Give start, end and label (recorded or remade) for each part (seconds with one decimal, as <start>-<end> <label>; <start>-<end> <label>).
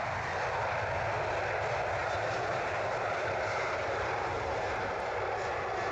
0.0-2.0 recorded; 2.0-5.5 remade; 5.5-5.9 recorded